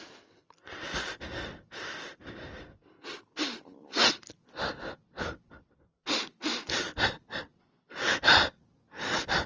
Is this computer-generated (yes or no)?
no